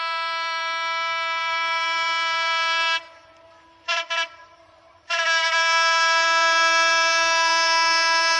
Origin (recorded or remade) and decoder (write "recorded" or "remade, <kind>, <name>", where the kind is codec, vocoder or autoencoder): remade, vocoder, BigVGAN v2